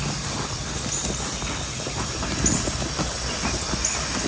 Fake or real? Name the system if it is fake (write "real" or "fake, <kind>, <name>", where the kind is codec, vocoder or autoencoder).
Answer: real